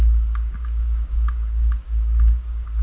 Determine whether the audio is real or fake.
fake